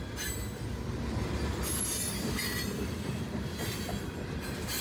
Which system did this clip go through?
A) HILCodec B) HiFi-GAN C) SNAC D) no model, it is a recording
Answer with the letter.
D